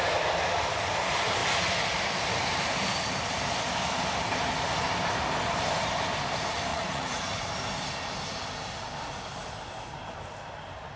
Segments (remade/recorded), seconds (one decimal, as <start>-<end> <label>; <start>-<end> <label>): 0.0-6.7 recorded; 6.7-7.4 remade; 7.4-11.0 recorded